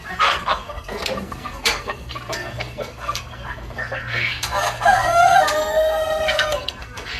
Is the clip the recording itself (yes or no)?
no